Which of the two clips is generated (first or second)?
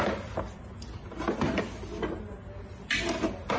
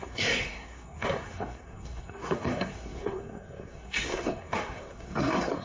second